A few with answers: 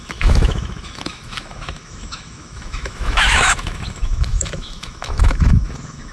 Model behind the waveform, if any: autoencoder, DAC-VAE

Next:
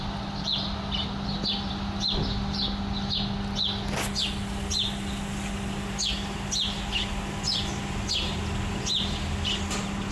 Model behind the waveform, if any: none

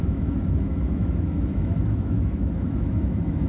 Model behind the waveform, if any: autoencoder, DAC-VAE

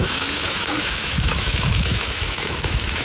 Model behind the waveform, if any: autoencoder, DAC-VAE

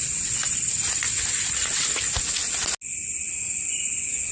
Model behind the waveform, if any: none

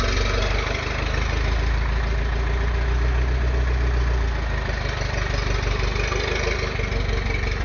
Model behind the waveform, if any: none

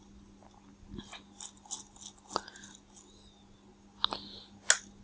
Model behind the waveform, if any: none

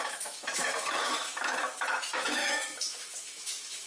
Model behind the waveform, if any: autoencoder, DAC-VAE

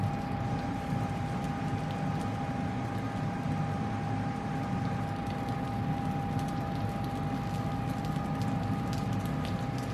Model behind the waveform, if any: none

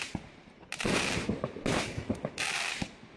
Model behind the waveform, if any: none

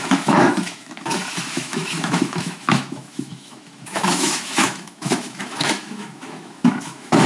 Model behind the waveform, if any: autoencoder, DAC-VAE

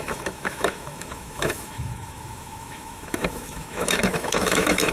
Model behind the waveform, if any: autoencoder, DAC-VAE